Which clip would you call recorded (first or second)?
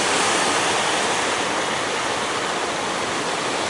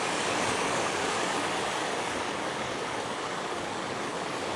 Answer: first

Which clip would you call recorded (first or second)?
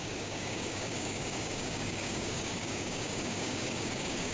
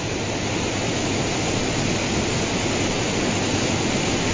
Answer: second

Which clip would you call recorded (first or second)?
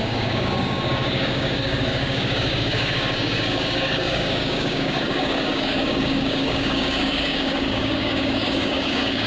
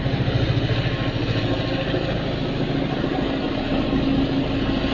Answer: second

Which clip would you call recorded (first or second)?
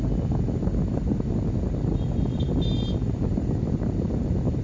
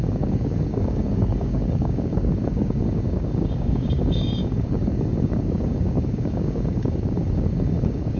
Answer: first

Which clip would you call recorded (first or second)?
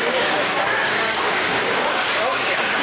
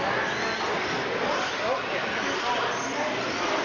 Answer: second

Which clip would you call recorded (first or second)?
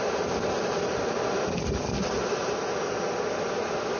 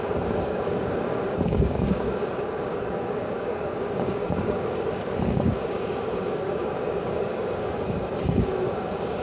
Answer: first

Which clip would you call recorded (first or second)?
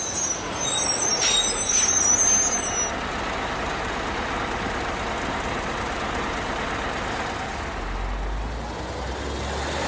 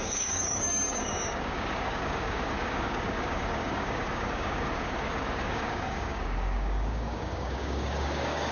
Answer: first